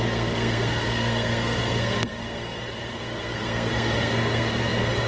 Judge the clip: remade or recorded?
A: remade